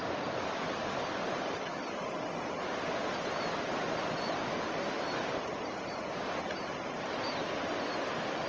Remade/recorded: recorded